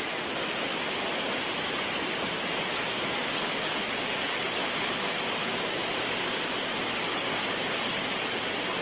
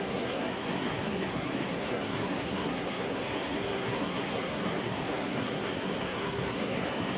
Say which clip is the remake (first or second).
second